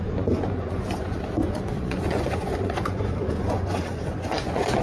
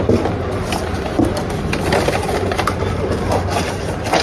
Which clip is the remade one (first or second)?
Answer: first